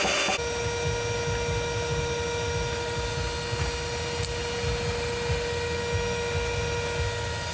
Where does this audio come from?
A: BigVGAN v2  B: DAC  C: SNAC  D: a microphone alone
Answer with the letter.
D